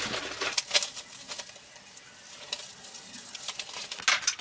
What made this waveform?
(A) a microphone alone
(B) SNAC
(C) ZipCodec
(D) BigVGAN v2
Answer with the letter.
A